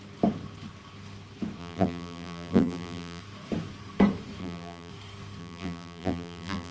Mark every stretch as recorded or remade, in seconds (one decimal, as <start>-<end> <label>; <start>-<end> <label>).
0.0-1.6 recorded; 1.6-3.2 remade; 3.2-4.4 recorded; 4.4-4.9 remade; 4.9-5.4 recorded; 5.4-6.7 remade